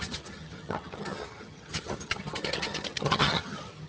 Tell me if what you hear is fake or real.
fake